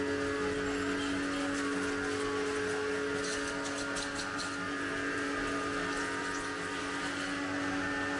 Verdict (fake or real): real